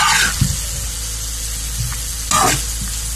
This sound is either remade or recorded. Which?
recorded